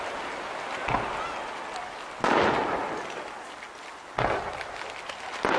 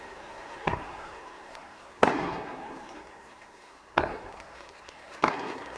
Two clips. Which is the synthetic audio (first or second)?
second